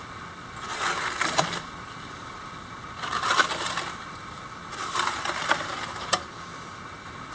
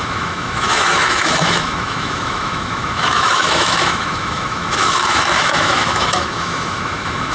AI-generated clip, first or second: second